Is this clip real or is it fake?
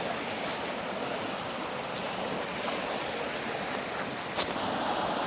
real